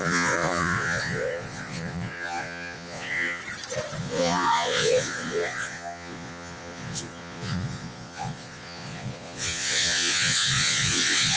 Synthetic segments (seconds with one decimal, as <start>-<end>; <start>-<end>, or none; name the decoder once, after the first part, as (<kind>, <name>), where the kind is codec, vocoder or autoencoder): 0.0-3.4 (vocoder, Vocos); 4.0-11.4